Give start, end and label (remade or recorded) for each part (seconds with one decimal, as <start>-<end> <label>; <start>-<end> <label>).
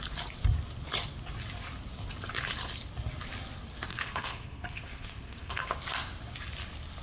0.0-3.9 recorded; 3.9-5.7 remade; 5.7-7.0 recorded